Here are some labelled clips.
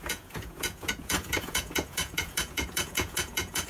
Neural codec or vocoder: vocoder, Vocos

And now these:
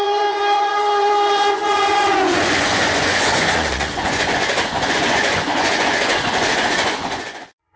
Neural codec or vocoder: vocoder, Vocos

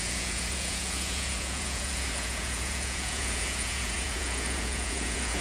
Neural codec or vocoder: vocoder, Vocos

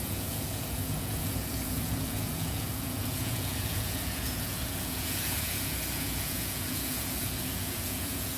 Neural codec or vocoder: vocoder, Vocos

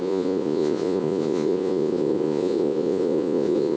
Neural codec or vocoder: vocoder, Vocos